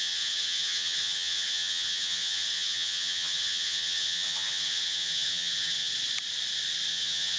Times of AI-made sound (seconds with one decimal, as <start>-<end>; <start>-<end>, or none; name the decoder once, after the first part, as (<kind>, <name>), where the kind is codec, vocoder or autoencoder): 0.0-5.9 (vocoder, HiFi-GAN); 6.9-7.4